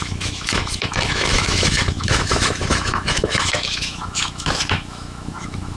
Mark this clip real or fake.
fake